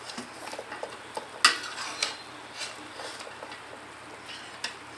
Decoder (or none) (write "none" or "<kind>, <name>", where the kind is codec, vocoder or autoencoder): none